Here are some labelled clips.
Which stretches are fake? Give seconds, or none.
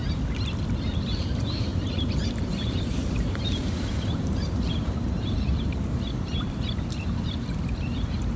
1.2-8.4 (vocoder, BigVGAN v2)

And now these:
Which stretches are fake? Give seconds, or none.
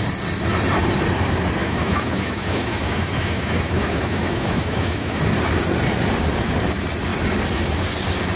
1.6-5.2 (autoencoder, DAC-VAE)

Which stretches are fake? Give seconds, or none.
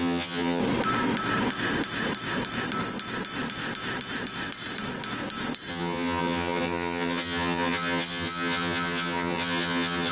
0.0-0.6 (vocoder, HiFi-GAN); 5.7-10.1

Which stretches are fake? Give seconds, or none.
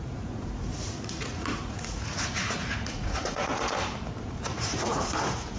0.0-3.5 (vocoder, Vocos); 4.2-5.6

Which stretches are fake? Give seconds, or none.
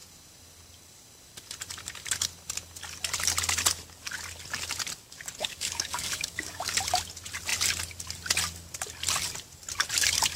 5.4-6.7 (codec, DAC)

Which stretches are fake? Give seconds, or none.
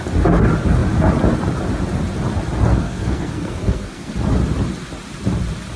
2.7-4.1 (codec, SNAC)